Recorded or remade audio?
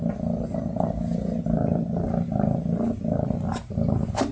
recorded